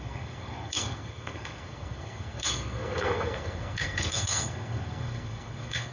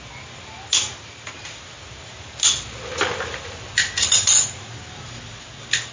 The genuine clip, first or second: second